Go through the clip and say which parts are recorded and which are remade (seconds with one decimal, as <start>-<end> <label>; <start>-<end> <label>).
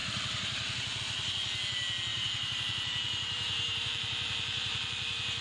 0.0-1.0 remade; 1.0-2.1 recorded; 2.1-5.4 remade